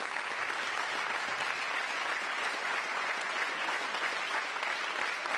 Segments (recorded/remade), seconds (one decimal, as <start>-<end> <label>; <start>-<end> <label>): 0.0-1.6 recorded; 1.6-4.6 remade; 4.6-5.4 recorded